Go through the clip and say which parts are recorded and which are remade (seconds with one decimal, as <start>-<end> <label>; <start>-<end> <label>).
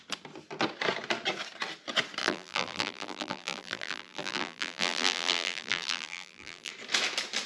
0.0-2.2 recorded; 2.2-6.7 remade; 6.7-7.5 recorded